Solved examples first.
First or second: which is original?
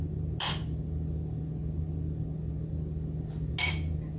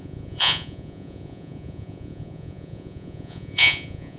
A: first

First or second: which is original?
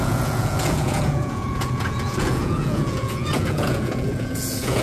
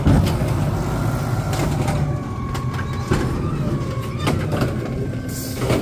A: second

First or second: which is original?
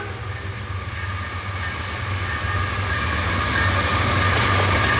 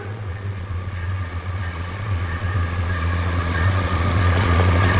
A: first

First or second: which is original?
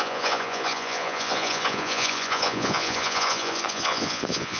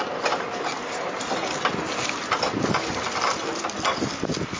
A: second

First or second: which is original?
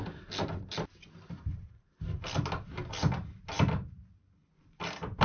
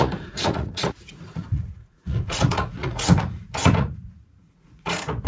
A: first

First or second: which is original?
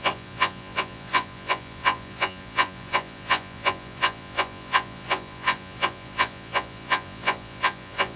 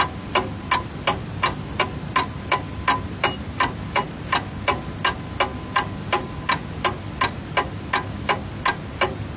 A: second